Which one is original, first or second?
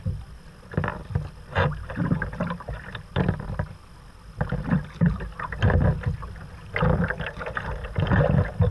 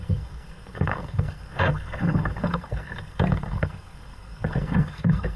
first